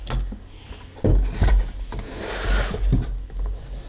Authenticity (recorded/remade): recorded